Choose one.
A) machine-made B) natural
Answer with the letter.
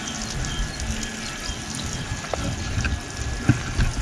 B